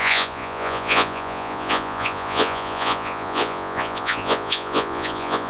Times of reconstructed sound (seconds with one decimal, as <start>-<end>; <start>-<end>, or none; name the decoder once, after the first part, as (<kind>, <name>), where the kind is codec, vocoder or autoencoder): 0.0-5.5 (vocoder, Vocos)

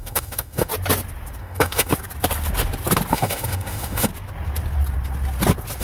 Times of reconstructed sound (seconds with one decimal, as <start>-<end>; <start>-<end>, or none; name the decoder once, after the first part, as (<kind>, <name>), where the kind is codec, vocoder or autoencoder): 0.0-0.7 (autoencoder, DAC-VAE); 1.4-1.9; 3.1-4.1

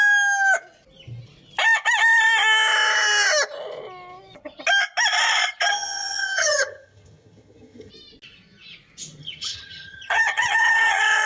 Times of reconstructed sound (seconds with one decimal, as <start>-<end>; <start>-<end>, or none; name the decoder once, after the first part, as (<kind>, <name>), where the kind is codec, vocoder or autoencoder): 5.7-7.9 (vocoder, HiFi-GAN); 9.2-11.3

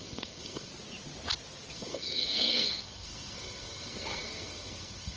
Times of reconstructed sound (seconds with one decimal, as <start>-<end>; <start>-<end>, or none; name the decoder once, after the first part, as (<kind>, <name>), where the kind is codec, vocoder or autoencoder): 0.0-0.7 (codec, SNAC); 1.7-5.2

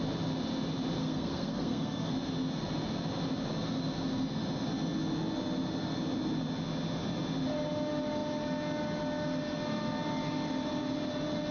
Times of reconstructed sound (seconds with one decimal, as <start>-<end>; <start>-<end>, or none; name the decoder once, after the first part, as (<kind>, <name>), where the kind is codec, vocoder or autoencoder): 1.0-2.1 (codec, SNAC)

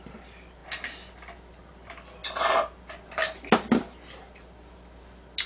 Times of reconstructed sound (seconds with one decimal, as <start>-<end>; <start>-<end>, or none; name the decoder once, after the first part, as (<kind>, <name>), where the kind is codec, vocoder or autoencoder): none